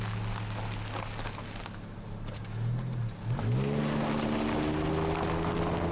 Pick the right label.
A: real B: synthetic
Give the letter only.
A